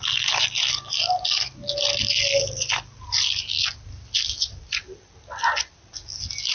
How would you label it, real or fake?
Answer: real